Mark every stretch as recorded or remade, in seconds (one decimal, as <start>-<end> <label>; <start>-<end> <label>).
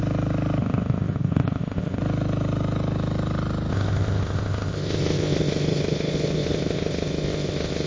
0.0-0.6 recorded; 0.6-2.0 remade; 2.0-3.7 recorded; 3.7-7.9 remade